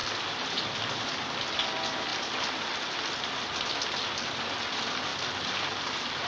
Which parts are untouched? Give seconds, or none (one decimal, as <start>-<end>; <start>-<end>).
0.0-6.3